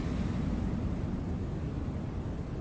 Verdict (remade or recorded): recorded